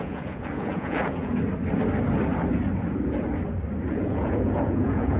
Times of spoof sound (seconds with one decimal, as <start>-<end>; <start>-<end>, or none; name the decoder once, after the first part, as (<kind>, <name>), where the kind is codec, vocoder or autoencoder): 0.0-1.3 (vocoder, Vocos); 3.9-5.2

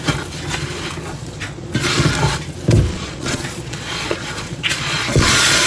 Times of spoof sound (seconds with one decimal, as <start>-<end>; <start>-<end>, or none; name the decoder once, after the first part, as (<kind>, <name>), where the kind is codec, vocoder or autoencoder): 1.1-1.7 (vocoder, Vocos); 2.9-5.7

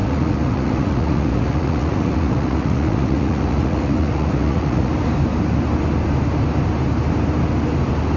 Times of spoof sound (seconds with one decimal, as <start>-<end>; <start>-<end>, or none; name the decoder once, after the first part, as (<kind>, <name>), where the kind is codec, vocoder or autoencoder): 0.0-4.9 (vocoder, Vocos)

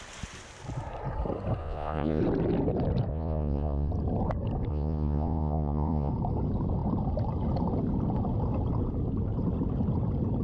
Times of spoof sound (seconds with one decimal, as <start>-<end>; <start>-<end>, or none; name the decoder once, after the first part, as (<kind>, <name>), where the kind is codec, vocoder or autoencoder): 1.6-2.2 (vocoder, Vocos); 3.1-3.9; 4.7-6.1

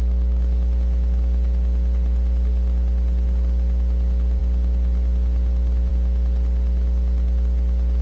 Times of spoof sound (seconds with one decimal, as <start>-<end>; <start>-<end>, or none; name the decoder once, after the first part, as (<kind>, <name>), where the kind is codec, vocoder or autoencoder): none

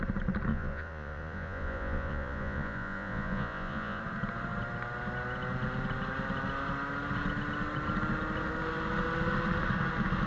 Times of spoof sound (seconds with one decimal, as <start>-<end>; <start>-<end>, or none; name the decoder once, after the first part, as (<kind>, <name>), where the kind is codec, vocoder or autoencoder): 0.5-4.0 (vocoder, Vocos)

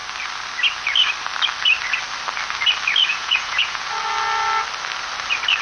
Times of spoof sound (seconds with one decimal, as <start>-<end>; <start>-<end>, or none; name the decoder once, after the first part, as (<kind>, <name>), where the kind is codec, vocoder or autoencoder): 3.1-3.9 (vocoder, Vocos)